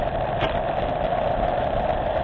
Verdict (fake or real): fake